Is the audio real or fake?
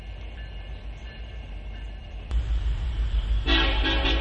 fake